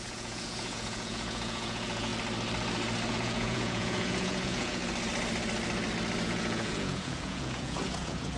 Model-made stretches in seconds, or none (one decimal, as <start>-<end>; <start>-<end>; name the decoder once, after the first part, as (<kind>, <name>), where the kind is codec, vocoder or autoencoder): 0.0-2.1 (vocoder, Vocos); 3.1-4.8; 6.2-8.4